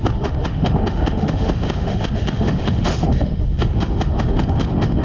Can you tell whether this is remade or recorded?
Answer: remade